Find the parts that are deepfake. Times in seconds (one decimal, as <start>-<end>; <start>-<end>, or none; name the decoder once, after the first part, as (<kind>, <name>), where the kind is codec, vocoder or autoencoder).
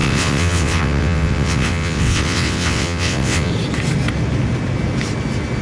0.0-3.5 (vocoder, WaveNeXt)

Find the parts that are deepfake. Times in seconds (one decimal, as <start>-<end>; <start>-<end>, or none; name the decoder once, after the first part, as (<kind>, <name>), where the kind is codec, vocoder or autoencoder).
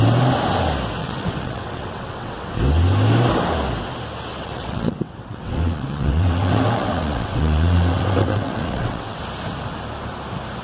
1.0-2.6 (vocoder, WaveNeXt); 4.3-9.2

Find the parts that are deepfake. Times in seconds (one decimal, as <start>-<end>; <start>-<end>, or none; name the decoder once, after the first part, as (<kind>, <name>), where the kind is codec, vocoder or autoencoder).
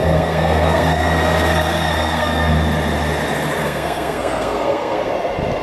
0.0-2.5 (codec, SNAC); 3.6-5.1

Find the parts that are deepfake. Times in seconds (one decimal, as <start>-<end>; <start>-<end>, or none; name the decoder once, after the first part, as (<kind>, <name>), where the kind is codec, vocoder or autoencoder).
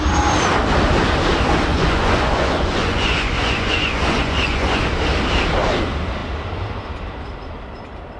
1.7-4.9 (vocoder, Vocos)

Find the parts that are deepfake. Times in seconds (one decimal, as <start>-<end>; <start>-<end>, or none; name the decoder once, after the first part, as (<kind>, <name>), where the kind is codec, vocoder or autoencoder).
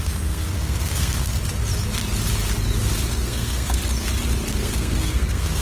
0.0-1.3 (codec, SNAC); 3.1-3.8; 4.5-5.6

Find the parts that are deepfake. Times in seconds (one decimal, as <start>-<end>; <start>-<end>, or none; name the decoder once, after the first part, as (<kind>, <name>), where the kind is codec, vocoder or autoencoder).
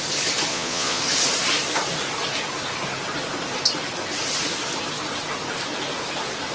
0.5-1.0 (vocoder, Vocos)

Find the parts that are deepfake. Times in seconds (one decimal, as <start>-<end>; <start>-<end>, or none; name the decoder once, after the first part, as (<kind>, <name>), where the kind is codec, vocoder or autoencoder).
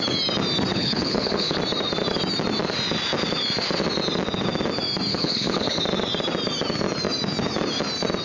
0.7-1.6 (codec, HILCodec); 5.1-5.8